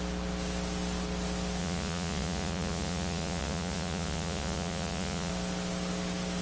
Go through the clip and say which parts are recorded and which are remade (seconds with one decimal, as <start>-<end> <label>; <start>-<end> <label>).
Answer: 0.0-1.6 recorded; 1.6-5.3 remade; 5.3-6.4 recorded